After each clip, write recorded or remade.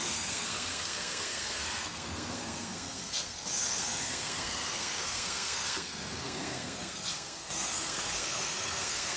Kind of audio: remade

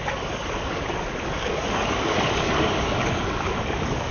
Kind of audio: remade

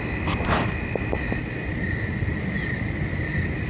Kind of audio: recorded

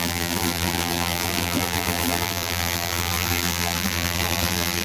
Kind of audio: remade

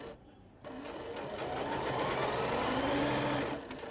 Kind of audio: recorded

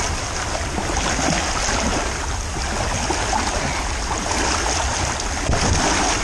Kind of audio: recorded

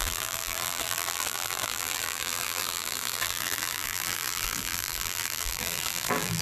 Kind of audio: remade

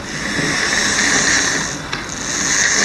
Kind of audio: recorded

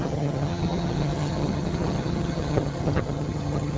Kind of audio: remade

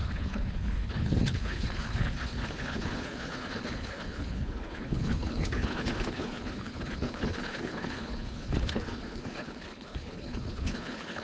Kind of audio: remade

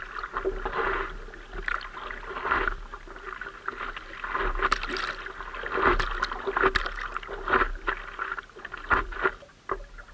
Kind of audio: recorded